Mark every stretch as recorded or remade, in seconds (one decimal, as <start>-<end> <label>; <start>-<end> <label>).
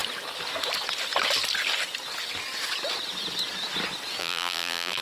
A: 0.0-4.2 recorded; 4.2-5.0 remade